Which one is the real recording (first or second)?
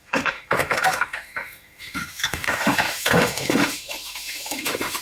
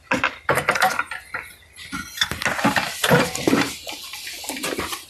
second